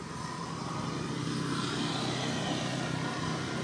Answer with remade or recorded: recorded